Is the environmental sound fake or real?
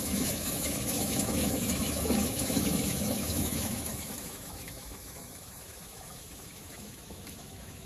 fake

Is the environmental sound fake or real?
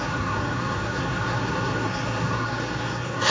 fake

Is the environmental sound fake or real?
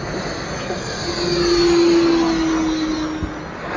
real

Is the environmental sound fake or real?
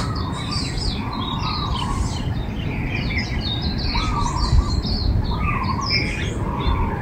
real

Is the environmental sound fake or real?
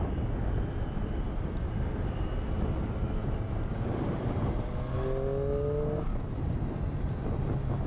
real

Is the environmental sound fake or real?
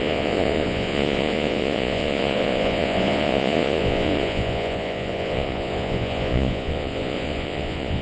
fake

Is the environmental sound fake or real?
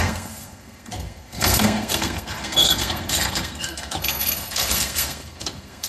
fake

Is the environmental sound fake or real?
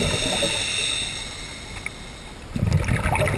real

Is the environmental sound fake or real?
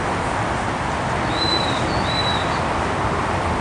fake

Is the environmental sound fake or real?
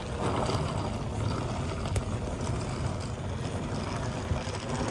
real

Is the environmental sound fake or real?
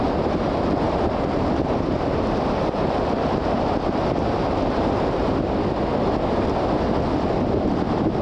fake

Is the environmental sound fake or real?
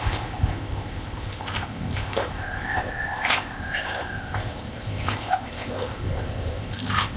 fake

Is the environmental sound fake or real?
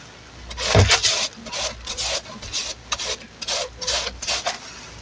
real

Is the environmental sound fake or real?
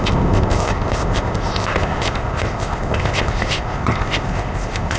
fake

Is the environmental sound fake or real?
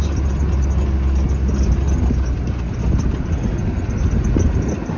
real